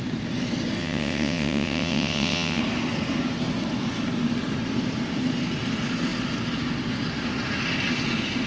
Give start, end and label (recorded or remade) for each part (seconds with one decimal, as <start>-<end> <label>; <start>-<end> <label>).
0.0-0.8 recorded; 0.8-2.6 remade; 2.6-8.5 recorded